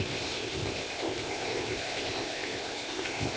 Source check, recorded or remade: remade